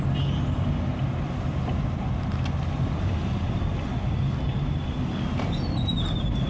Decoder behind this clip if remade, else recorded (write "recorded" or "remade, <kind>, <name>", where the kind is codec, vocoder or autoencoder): recorded